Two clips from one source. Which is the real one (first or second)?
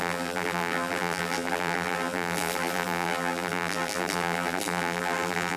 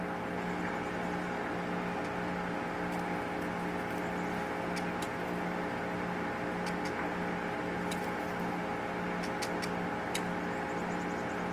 second